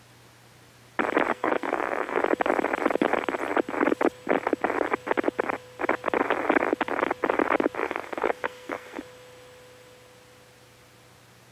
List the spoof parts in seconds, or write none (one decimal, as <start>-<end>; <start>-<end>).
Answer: 1.3-2.2; 7.8-9.0